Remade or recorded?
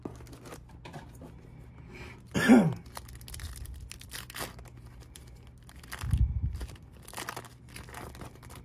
recorded